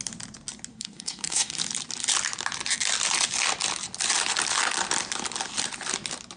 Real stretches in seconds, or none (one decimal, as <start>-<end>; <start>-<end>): 0.0-0.7; 1.6-6.4